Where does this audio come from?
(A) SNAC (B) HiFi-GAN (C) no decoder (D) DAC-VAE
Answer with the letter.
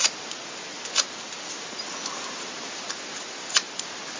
C